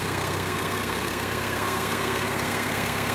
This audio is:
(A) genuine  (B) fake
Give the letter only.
B